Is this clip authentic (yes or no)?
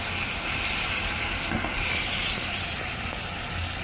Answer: yes